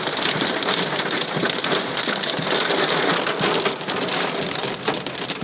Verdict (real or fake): real